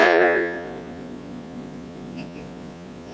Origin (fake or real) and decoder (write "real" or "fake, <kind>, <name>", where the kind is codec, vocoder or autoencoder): fake, vocoder, Vocos